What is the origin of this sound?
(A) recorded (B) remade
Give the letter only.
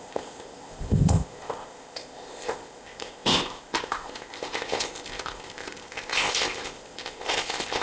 B